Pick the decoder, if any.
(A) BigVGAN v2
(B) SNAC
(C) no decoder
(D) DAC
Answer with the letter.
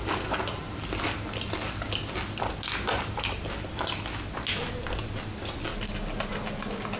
C